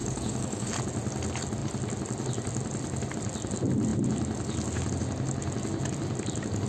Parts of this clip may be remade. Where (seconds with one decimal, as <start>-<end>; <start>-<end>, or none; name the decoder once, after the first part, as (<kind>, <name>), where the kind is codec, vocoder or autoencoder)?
0.0-0.7 (codec, DAC)